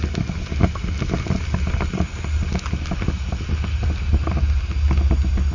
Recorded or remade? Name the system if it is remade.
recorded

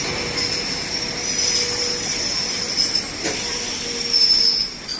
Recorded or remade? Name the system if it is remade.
recorded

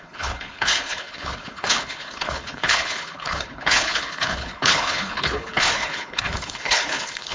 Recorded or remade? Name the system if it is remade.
remade, codec, HILCodec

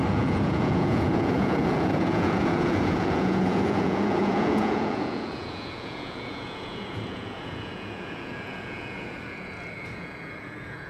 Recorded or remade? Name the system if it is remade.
remade, vocoder, Vocos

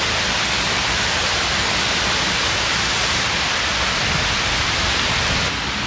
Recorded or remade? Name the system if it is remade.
recorded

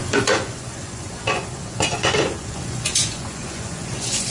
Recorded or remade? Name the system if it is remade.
remade, vocoder, Vocos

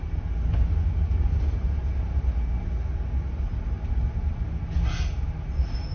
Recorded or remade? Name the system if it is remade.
recorded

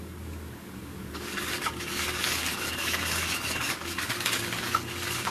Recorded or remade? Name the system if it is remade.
remade, codec, DAC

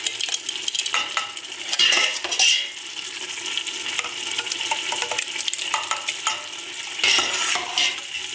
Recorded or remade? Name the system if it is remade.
recorded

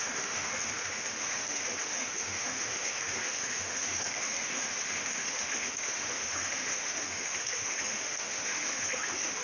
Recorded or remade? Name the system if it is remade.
remade, autoencoder, DAC-VAE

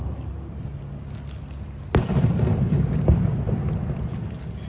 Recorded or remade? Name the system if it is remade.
recorded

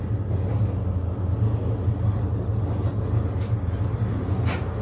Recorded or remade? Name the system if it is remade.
recorded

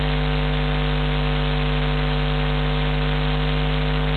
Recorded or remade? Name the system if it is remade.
recorded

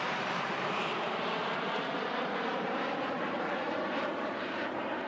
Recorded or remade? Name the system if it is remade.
remade, vocoder, BigVGAN v2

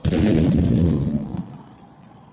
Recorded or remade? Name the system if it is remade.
remade, vocoder, Vocos